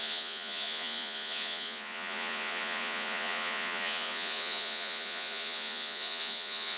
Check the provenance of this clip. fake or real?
fake